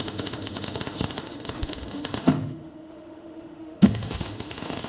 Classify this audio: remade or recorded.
remade